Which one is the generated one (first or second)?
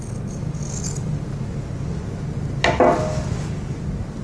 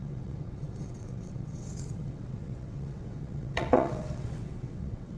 second